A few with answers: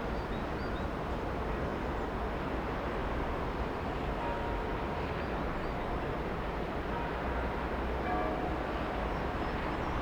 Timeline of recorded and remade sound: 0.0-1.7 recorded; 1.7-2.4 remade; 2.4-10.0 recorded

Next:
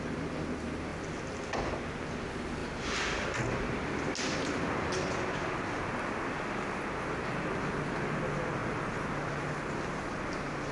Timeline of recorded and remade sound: 0.0-10.7 recorded

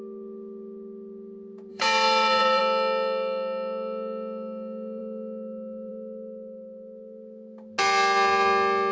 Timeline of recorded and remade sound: 0.0-1.7 recorded; 1.7-2.6 remade; 2.6-8.9 recorded

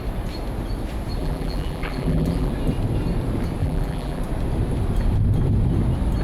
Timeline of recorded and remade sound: 0.0-1.2 recorded; 1.2-2.5 remade; 2.5-3.6 recorded; 3.6-4.2 remade; 4.2-6.2 recorded